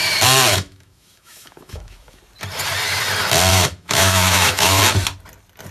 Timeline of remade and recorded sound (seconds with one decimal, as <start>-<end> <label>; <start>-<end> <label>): 0.0-0.5 recorded; 0.5-2.2 remade; 2.2-3.5 recorded; 3.5-4.8 remade; 4.8-5.7 recorded